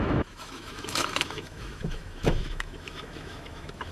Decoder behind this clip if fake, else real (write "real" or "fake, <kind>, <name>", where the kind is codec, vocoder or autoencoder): fake, autoencoder, DAC-VAE